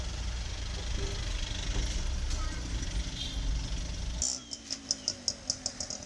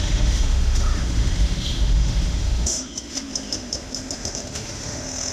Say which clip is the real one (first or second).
first